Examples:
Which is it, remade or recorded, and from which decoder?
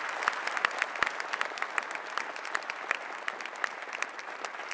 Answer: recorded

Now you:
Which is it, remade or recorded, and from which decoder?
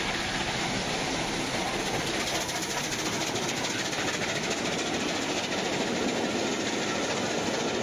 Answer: recorded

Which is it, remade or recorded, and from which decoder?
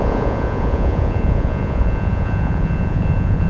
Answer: remade, vocoder, Vocos